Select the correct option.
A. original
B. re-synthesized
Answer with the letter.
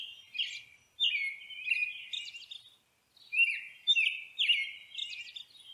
A